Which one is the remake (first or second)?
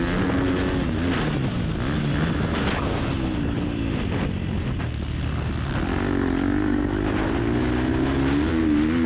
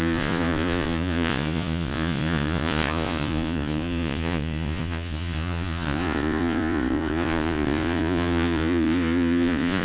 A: second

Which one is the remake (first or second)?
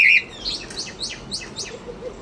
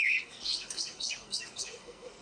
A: second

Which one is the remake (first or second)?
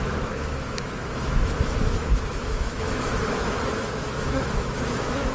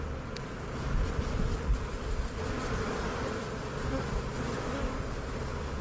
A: first